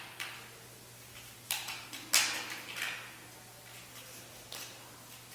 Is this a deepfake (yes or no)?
no